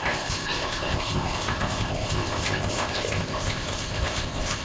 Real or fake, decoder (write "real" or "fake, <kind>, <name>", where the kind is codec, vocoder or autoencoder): fake, codec, ZipCodec